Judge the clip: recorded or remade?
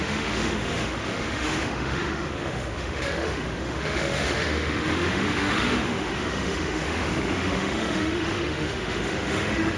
remade